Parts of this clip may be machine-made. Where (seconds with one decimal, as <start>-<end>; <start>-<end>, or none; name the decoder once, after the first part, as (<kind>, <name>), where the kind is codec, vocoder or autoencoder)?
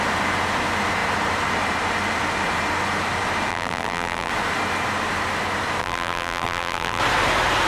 3.5-4.3 (vocoder, BigVGAN v2); 5.8-7.0